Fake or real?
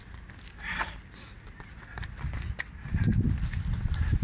real